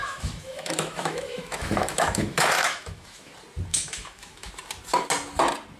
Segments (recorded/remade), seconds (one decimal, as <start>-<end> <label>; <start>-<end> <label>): 0.0-3.3 remade; 3.3-3.7 recorded; 3.7-4.5 remade; 4.5-5.8 recorded

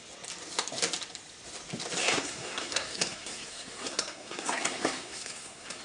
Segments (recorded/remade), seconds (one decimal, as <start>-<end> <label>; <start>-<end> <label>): 0.0-2.0 recorded; 2.0-5.8 remade

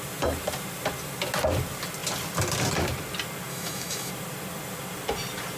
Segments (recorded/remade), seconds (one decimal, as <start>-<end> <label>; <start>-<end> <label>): 0.0-3.5 recorded; 3.5-4.1 remade; 4.1-5.6 recorded

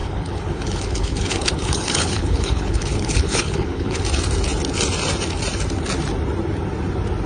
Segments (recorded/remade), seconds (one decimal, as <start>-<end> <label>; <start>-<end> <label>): 0.0-4.0 remade; 4.0-7.3 recorded

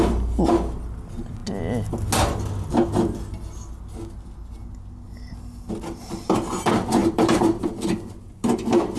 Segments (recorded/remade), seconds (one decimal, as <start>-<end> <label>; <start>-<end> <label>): 0.0-7.0 recorded; 7.0-8.1 remade; 8.1-9.0 recorded

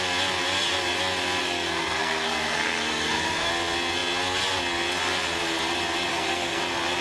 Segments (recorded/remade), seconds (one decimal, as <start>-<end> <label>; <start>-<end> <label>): 0.0-1.4 recorded; 1.4-3.5 remade; 3.5-6.1 recorded; 6.1-6.6 remade; 6.6-7.0 recorded

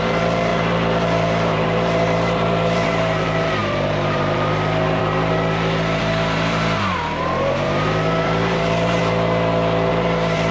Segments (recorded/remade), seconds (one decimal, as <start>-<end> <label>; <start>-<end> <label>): 0.0-9.0 remade; 9.0-9.9 recorded; 9.9-10.5 remade